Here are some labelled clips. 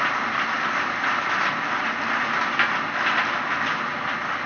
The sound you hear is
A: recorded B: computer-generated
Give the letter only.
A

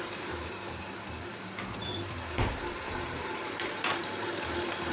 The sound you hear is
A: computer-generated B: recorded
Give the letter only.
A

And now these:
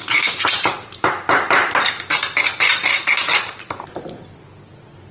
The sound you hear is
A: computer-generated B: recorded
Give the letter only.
B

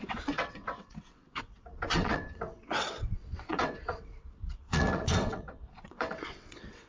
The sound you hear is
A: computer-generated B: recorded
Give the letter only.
A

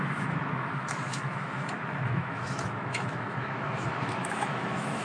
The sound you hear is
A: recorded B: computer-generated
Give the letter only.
B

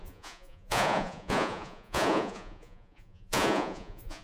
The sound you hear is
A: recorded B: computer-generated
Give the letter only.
B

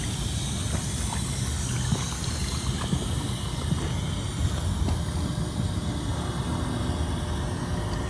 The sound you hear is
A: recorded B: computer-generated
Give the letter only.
A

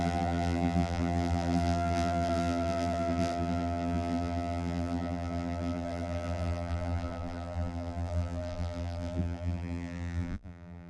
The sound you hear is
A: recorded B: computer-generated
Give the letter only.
B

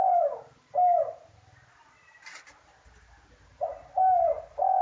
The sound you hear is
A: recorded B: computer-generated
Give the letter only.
A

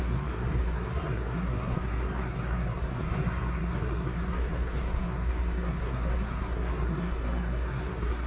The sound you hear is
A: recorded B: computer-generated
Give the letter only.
B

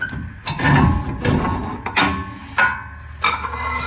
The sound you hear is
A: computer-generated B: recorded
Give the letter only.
B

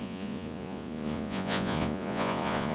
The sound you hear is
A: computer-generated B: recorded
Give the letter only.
A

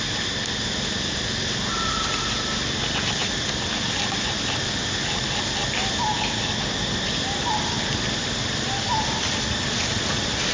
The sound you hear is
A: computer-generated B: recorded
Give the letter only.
B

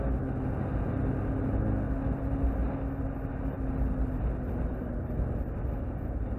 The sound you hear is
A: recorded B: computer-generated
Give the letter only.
A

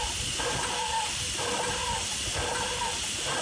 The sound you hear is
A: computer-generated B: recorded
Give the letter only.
B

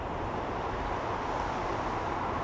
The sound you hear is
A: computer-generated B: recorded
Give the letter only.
B